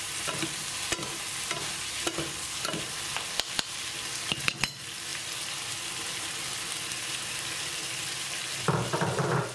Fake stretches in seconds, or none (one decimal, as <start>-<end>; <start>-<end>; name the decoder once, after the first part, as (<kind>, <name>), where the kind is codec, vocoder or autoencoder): 5.1-8.4 (vocoder, BigVGAN v2)